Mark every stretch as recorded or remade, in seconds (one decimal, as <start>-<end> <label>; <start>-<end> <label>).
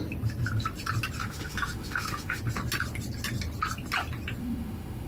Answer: 0.0-1.2 recorded; 1.2-2.4 remade; 2.4-4.4 recorded; 4.4-5.1 remade